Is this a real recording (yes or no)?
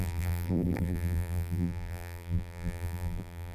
no